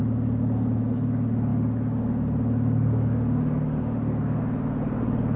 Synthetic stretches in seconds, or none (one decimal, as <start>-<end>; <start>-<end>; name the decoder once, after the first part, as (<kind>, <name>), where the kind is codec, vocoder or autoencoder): none